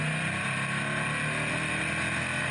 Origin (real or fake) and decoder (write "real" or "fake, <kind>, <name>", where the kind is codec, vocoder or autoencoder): real